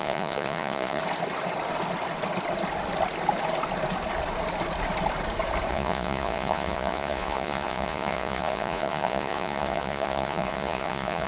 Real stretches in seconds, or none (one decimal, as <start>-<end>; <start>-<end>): 1.0-5.7